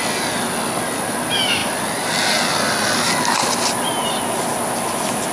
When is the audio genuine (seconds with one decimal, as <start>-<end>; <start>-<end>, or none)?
0.0-5.3